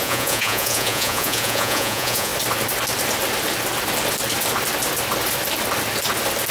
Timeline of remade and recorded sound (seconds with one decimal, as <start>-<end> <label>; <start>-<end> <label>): 0.0-2.3 remade; 2.3-6.5 recorded

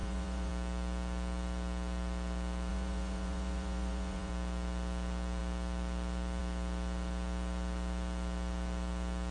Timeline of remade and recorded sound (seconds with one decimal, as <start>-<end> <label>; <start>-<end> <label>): 0.0-0.5 remade; 0.5-2.7 recorded; 2.7-4.3 remade; 4.3-9.3 recorded

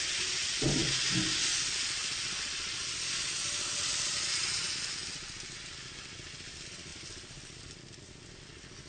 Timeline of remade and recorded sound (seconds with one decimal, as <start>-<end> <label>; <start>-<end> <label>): 0.0-8.9 recorded

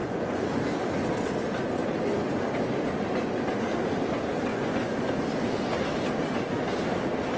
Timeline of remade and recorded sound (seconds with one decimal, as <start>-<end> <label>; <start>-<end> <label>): 0.0-0.6 remade; 0.6-4.5 recorded; 4.5-5.1 remade; 5.1-7.4 recorded

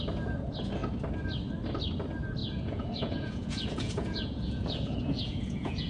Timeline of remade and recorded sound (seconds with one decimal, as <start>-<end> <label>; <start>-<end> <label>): 0.0-2.4 recorded; 2.4-5.9 remade

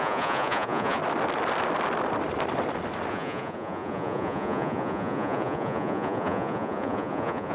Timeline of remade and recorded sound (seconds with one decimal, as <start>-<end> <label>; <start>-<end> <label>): 0.0-1.0 remade; 1.0-3.1 recorded; 3.1-7.5 remade